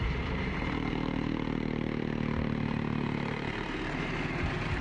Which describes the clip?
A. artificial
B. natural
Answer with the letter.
A